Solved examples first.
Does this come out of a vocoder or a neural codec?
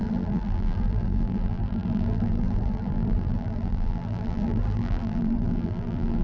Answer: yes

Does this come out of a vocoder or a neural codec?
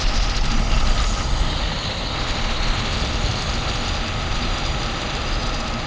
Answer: no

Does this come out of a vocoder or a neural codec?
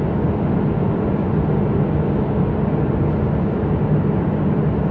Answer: no